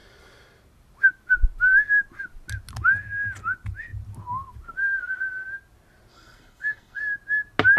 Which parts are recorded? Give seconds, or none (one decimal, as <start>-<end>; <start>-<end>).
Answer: 0.0-6.1; 7.0-7.8